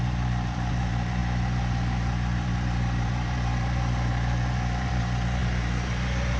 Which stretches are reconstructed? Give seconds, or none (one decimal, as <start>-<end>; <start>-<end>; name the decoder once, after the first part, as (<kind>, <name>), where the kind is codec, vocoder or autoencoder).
0.0-6.4 (vocoder, BigVGAN v2)